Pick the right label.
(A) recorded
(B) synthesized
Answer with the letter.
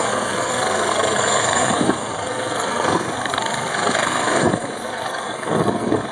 B